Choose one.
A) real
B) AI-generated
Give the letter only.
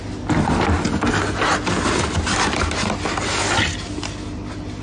A